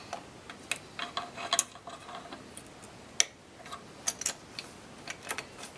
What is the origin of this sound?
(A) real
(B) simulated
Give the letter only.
A